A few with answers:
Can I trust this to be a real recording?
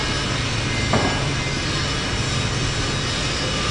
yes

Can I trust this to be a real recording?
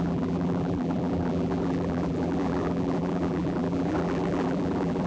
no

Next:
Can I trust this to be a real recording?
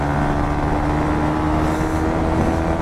yes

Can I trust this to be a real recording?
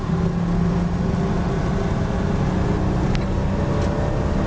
yes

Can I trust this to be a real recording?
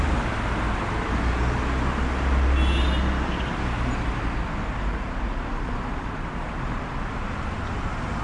yes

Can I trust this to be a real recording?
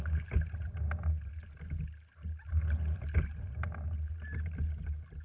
yes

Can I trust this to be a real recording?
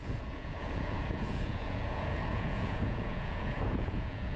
no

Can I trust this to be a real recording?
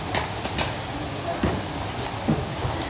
yes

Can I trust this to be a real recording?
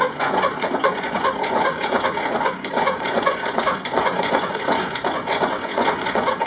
no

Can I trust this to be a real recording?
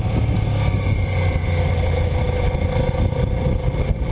yes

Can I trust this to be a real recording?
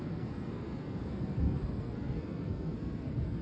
no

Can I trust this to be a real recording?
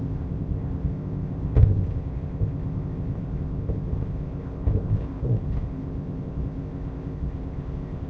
no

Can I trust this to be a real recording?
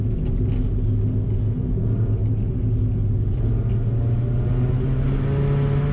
yes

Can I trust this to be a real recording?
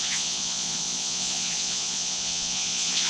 no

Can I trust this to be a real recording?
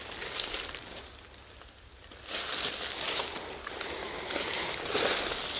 yes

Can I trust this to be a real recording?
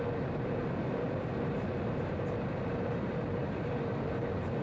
no